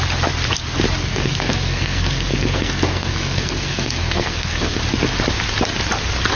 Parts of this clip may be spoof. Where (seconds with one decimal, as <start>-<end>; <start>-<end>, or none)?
1.0-4.8